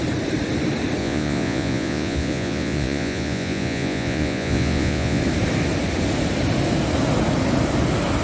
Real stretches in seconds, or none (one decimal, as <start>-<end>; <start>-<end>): 0.0-1.0; 5.2-8.2